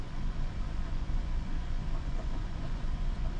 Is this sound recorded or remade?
remade